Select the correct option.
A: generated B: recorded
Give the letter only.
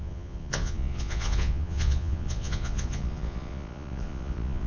A